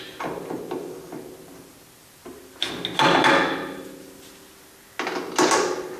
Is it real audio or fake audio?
real